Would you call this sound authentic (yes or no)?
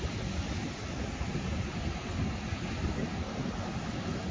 yes